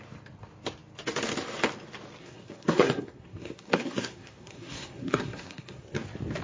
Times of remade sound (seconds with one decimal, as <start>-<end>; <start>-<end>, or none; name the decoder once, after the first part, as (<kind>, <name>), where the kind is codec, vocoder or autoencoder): 2.2-6.0 (codec, SNAC)